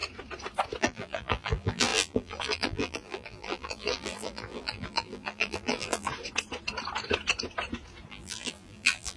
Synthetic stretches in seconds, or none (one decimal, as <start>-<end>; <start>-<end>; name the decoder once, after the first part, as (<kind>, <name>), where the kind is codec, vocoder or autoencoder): 0.8-6.1 (vocoder, BigVGAN v2); 8.1-9.2